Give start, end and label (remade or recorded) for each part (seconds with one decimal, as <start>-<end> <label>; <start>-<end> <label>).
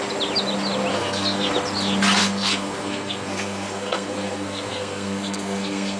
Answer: 0.0-0.9 recorded; 0.9-1.5 remade; 1.5-2.2 recorded; 2.2-6.0 remade